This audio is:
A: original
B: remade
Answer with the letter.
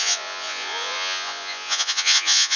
B